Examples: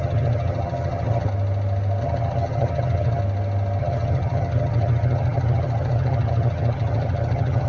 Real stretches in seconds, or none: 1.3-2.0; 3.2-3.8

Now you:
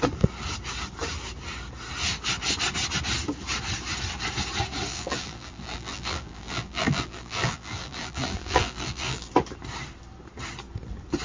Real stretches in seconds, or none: 0.0-4.9; 9.3-11.2

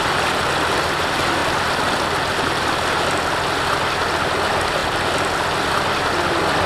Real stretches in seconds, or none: 0.0-6.7